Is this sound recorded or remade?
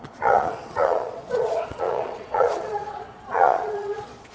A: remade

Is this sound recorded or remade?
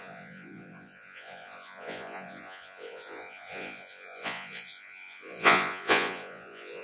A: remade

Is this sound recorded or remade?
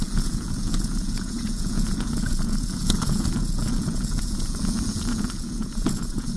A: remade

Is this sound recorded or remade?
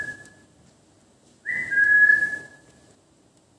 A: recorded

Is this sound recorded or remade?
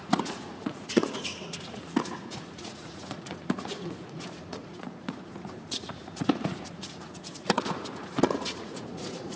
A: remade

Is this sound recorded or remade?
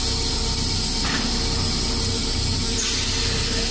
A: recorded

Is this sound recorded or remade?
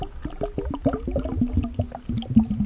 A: recorded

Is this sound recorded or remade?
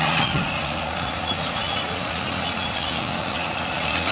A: remade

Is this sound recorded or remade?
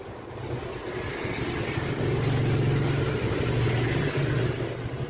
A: recorded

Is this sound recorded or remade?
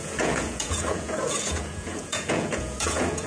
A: remade